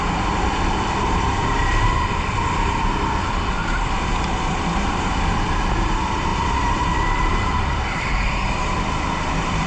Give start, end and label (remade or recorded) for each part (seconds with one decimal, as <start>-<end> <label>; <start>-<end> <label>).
0.0-9.7 remade